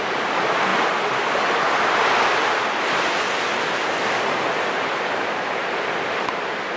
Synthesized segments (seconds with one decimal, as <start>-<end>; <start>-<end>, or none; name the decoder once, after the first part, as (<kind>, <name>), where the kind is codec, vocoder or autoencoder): none